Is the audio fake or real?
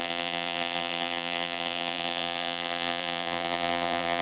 fake